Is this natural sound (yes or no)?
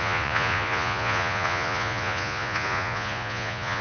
no